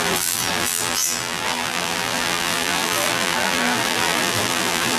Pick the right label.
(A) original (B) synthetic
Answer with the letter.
B